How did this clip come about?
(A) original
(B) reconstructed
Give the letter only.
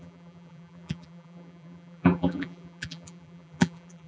B